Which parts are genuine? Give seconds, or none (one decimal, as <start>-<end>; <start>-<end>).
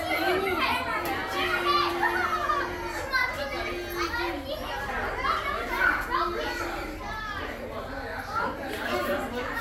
0.0-9.6